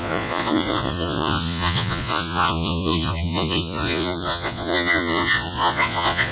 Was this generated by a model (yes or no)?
yes